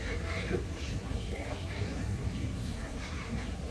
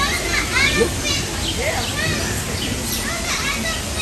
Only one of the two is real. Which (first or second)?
second